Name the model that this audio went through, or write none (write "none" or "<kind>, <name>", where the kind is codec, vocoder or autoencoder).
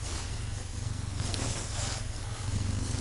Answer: codec, SNAC